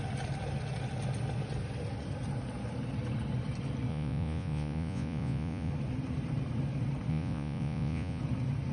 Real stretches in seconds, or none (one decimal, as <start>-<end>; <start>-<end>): 0.0-3.9; 5.7-7.1; 8.2-8.7